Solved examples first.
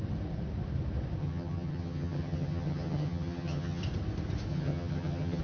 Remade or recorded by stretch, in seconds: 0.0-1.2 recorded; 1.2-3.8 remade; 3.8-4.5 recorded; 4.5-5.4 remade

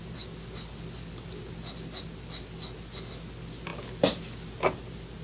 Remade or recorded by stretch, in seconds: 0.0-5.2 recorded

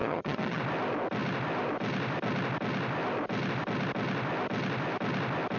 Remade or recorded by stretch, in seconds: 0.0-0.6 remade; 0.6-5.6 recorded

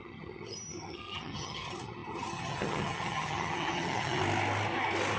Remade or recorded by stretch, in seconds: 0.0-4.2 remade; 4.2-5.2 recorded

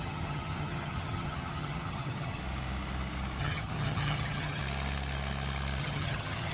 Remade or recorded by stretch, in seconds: 0.0-2.4 remade; 2.4-3.4 recorded; 3.4-4.6 remade; 4.6-5.8 recorded; 5.8-6.5 remade

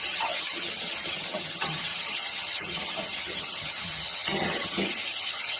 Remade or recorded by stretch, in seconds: 0.0-5.6 remade

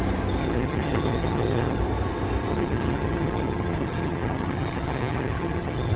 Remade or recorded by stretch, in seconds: 0.0-0.4 recorded; 0.4-1.8 remade; 1.8-2.5 recorded; 2.5-6.0 remade